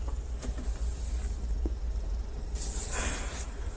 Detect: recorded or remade recorded